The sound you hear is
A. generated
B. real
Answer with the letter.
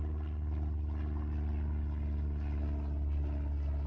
B